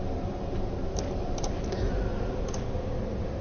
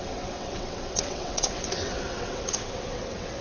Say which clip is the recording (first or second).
first